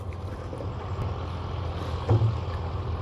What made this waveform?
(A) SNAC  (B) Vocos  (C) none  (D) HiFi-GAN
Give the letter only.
C